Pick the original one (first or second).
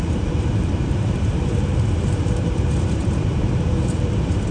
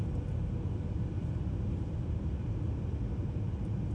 second